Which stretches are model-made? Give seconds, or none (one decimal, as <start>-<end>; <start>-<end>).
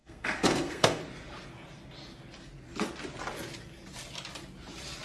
0.0-1.0